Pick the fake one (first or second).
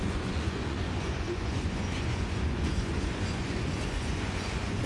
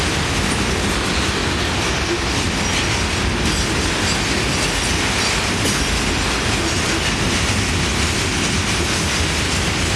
first